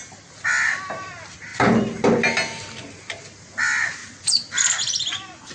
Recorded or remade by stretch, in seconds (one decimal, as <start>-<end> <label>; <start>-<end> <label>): 0.0-5.5 recorded